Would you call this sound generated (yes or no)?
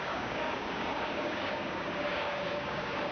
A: yes